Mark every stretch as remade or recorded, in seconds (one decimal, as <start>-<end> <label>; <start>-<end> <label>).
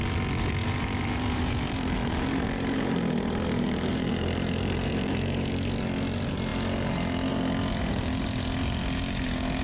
0.0-0.6 recorded; 0.6-5.5 remade; 5.5-9.6 recorded